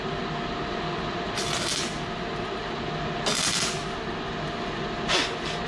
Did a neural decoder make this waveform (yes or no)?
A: no